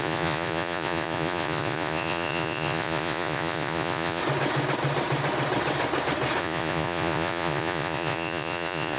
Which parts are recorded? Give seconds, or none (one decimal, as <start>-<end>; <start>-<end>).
4.2-6.4